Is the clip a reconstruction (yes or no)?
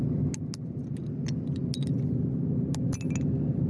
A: no